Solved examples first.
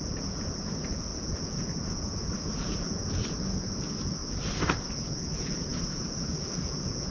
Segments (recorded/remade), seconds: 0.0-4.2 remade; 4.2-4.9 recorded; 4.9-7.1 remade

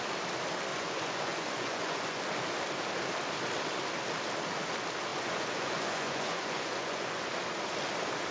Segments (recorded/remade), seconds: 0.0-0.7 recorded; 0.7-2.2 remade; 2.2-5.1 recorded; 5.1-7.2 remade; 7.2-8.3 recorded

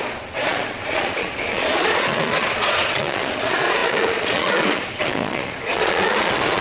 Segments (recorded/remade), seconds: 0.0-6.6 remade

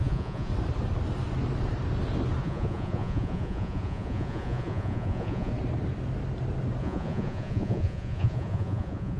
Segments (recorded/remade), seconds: 0.0-0.5 remade; 0.5-2.4 recorded; 2.4-5.5 remade; 5.5-6.8 recorded; 6.8-9.2 remade